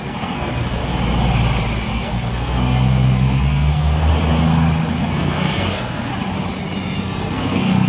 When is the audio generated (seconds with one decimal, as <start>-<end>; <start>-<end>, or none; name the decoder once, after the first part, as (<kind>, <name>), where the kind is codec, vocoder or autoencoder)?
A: 0.0-0.8 (codec, SNAC); 1.9-4.1; 5.0-6.1; 7.0-7.9